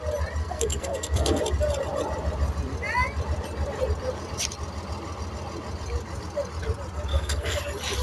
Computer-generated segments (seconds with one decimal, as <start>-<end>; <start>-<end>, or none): 0.4-1.4; 7.1-7.6